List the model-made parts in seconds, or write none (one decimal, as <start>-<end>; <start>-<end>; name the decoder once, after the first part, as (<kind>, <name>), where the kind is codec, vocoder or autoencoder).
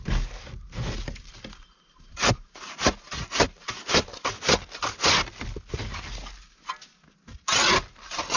none